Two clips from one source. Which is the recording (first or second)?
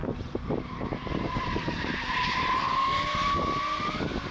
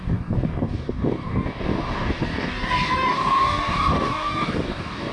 first